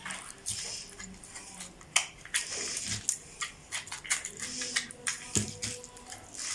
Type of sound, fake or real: real